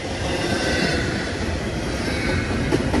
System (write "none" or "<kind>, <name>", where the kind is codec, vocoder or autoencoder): none